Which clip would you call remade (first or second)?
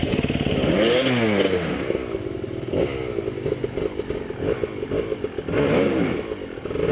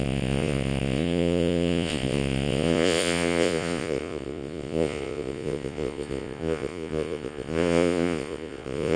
second